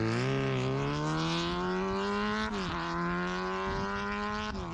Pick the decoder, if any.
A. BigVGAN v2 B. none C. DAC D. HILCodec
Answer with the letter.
B